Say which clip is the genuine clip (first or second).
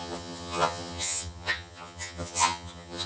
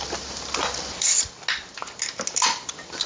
second